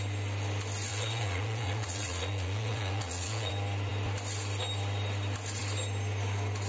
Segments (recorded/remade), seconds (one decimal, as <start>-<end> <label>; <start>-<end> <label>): 0.0-0.9 recorded; 0.9-3.5 remade; 3.5-6.7 recorded